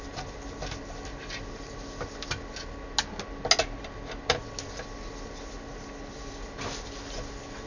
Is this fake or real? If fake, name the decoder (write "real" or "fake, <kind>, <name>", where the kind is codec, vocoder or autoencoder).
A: real